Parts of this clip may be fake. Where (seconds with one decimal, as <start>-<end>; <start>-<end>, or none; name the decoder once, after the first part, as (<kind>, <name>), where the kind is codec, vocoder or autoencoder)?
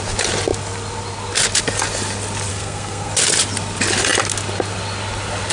2.5-3.1 (codec, SNAC)